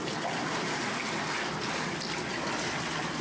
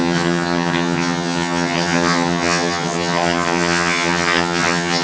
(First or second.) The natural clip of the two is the first